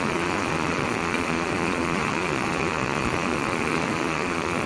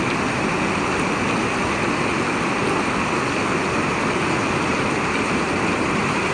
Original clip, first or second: second